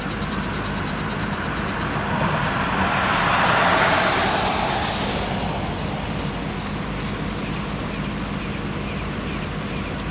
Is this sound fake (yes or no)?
no